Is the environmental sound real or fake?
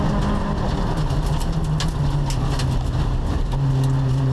real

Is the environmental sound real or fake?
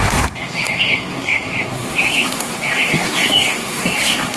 fake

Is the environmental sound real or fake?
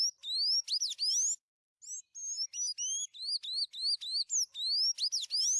real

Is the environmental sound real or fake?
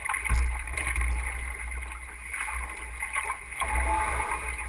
real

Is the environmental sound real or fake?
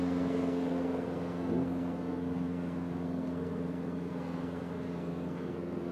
fake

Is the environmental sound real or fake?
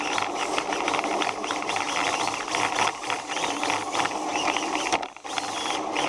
real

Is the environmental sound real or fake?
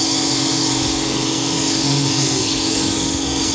fake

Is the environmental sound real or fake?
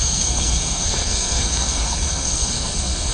fake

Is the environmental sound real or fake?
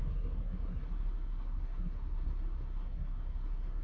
fake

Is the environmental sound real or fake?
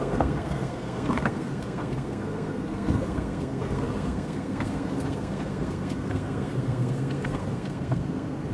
fake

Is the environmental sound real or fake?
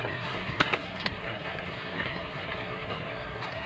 fake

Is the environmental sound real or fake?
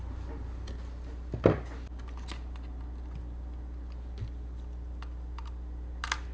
real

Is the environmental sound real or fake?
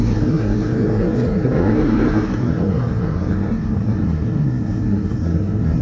fake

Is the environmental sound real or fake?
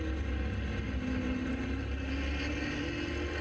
real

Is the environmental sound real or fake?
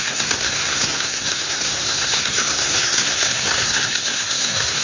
fake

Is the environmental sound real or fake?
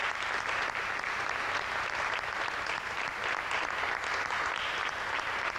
real